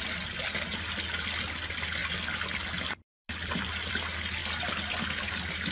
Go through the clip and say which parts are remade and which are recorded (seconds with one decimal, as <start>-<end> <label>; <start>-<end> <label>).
0.0-5.7 recorded